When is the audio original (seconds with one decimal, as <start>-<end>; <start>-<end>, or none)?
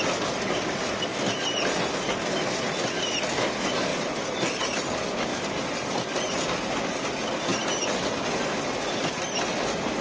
0.0-3.9; 4.7-5.3; 6.4-10.0